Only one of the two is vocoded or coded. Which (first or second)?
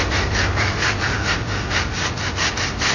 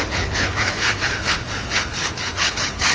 second